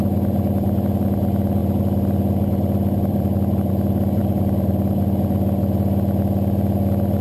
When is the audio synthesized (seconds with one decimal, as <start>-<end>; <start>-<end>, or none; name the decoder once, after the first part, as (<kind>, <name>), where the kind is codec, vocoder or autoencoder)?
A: 1.6-3.7 (vocoder, BigVGAN v2); 4.2-4.7